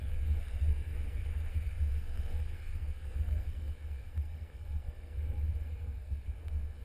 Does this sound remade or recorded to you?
remade